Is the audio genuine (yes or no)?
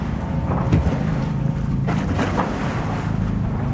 yes